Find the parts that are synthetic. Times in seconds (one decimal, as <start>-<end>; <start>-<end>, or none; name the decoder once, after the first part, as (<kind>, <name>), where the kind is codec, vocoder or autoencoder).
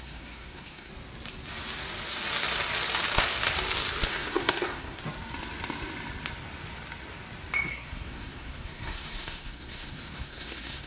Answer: 0.0-0.9 (codec, SNAC); 4.1-5.0; 7.7-10.9